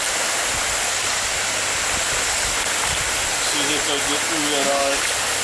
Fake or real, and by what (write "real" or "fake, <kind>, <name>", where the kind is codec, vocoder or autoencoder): real